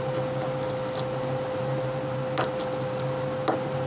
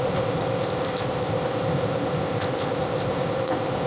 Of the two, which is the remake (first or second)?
second